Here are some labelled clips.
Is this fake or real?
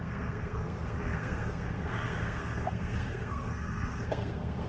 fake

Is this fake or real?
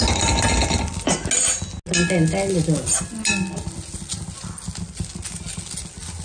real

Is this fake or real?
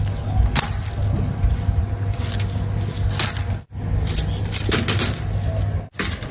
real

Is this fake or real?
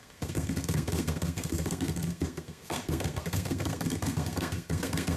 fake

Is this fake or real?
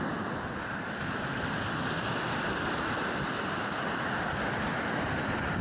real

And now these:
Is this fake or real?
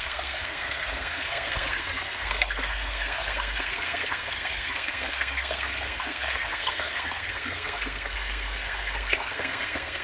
fake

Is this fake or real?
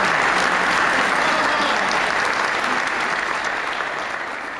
real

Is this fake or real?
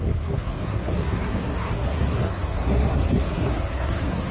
fake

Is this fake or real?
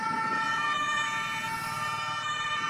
real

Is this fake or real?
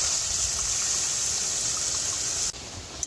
real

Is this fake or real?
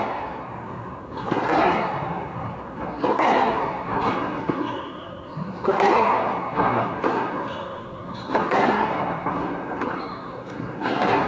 fake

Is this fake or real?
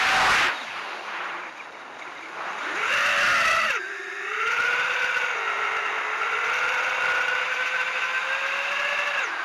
real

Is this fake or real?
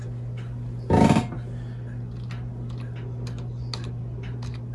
real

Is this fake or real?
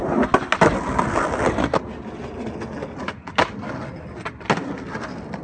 real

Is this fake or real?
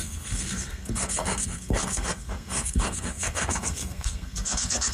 fake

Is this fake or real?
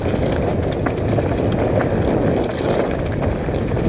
real